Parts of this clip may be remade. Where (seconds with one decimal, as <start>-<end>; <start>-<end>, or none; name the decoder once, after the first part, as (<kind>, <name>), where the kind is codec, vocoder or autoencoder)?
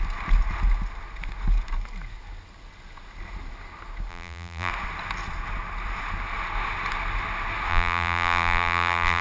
4.1-4.7 (vocoder, BigVGAN v2); 7.7-9.2